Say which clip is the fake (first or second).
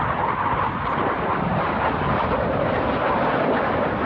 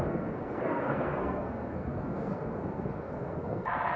second